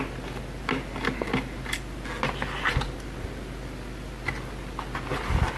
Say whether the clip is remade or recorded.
recorded